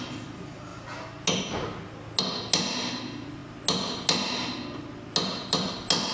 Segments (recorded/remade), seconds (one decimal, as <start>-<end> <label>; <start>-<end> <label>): 0.0-6.1 recorded